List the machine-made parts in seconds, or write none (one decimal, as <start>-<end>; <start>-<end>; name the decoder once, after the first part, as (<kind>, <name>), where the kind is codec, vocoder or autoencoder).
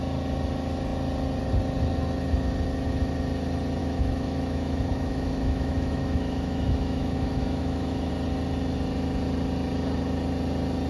3.8-8.1 (autoencoder, DAC-VAE)